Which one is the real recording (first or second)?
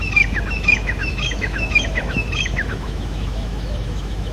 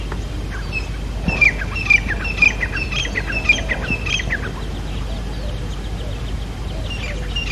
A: second